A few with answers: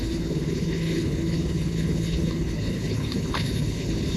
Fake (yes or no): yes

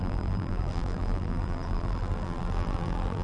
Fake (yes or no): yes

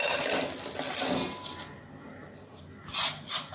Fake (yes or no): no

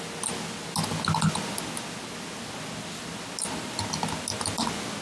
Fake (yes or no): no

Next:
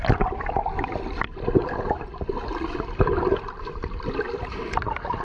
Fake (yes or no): no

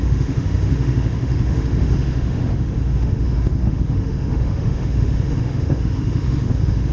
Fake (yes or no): yes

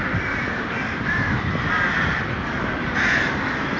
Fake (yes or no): no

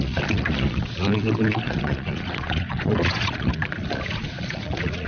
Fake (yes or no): yes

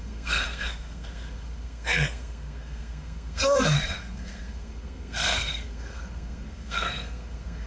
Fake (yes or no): yes